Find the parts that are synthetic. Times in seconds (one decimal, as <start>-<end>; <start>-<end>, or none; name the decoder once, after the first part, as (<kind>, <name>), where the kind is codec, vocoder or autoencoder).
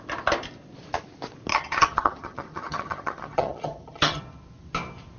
1.5-4.2 (vocoder, HiFi-GAN)